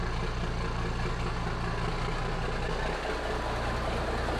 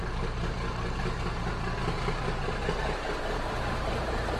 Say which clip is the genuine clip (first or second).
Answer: first